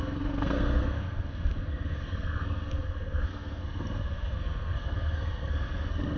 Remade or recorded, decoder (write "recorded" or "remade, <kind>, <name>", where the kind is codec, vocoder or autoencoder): remade, codec, SNAC